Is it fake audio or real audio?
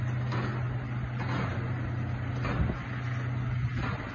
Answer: real